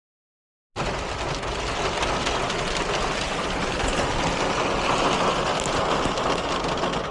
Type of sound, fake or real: real